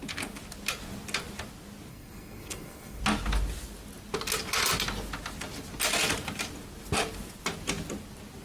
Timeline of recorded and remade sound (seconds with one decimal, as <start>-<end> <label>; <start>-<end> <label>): 0.0-1.9 recorded; 1.9-3.0 remade; 3.0-8.4 recorded

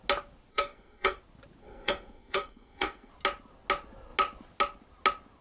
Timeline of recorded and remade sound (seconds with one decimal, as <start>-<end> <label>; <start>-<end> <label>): 0.0-0.5 recorded; 0.5-1.2 remade; 1.2-1.6 recorded; 1.6-3.1 remade; 3.1-5.4 recorded

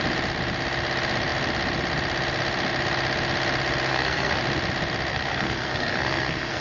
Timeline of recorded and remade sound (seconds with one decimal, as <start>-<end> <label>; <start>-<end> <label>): 0.0-3.9 recorded; 3.9-4.4 remade; 4.4-5.1 recorded; 5.1-6.6 remade

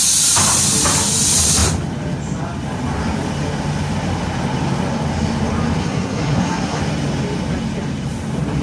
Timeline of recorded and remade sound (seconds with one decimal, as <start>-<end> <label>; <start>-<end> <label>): 0.0-5.8 recorded; 5.8-6.8 remade; 6.8-8.6 recorded